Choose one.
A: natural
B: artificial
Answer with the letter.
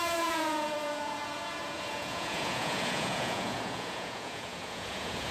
B